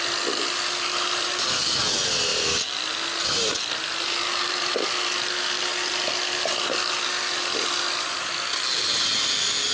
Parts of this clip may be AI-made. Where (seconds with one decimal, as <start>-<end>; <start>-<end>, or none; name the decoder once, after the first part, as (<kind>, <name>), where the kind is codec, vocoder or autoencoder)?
none